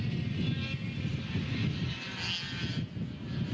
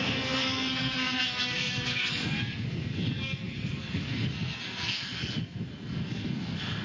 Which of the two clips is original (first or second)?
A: first